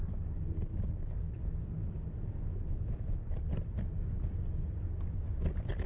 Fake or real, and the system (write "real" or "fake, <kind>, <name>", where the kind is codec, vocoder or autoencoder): real